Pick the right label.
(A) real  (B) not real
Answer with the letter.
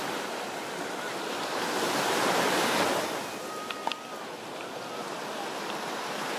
A